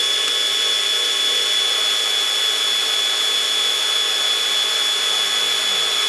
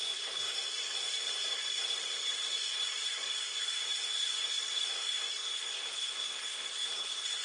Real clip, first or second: first